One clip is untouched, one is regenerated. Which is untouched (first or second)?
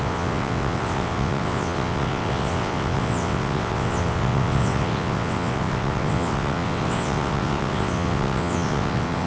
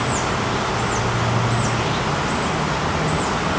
second